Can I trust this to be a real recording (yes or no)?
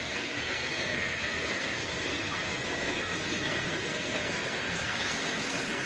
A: no